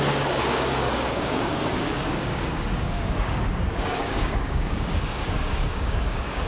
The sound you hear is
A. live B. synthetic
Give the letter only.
B